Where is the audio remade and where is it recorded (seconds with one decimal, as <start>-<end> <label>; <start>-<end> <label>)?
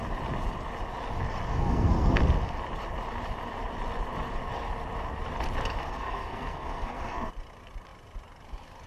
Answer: 0.0-1.5 recorded; 1.5-2.2 remade; 2.2-5.8 recorded; 5.8-7.3 remade; 7.3-8.9 recorded